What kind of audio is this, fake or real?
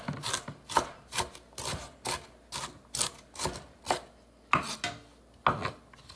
real